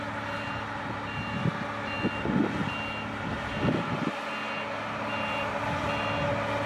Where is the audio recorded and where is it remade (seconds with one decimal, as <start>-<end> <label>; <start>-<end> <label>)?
0.0-6.7 recorded